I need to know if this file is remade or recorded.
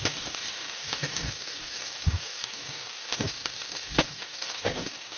remade